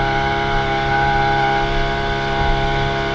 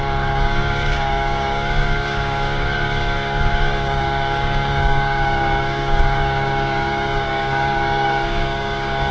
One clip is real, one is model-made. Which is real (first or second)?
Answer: first